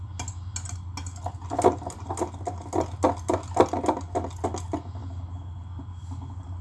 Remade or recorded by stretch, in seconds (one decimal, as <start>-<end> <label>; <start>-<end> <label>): 0.0-6.6 recorded